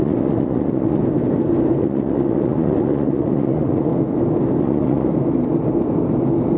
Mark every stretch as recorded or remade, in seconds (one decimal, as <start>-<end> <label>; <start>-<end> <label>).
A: 0.0-1.0 remade; 1.0-1.8 recorded; 1.8-3.9 remade; 3.9-4.6 recorded; 4.6-5.1 remade; 5.1-6.6 recorded